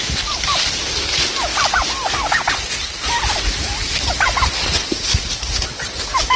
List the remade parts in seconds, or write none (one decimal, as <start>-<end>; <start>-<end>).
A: 0.0-1.5; 2.5-6.4